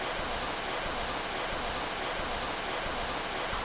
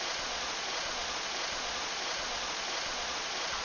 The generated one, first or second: second